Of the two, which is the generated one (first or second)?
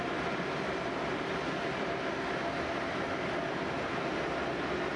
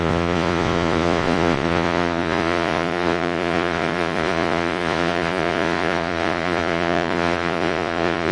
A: second